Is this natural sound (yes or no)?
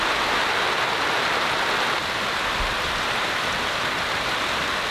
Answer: yes